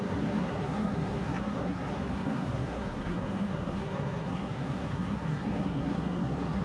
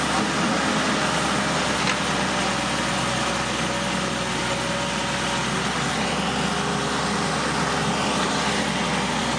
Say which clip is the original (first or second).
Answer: second